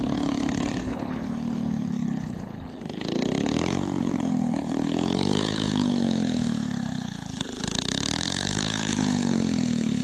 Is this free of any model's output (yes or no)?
no